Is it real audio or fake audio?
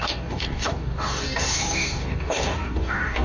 fake